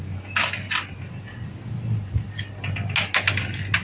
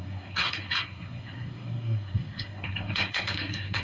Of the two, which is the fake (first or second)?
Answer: second